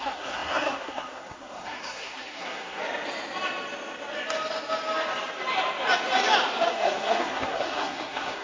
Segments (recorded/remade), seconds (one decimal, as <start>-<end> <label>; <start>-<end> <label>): 0.0-2.8 remade; 2.8-6.7 recorded; 6.7-8.4 remade